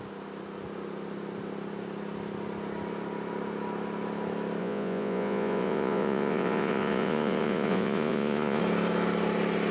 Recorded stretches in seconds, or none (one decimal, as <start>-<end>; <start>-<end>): 0.0-4.6; 8.6-9.7